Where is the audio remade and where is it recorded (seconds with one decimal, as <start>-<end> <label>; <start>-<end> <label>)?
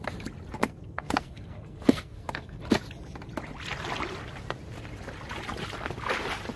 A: 0.0-0.6 recorded; 0.6-2.6 remade; 2.6-6.6 recorded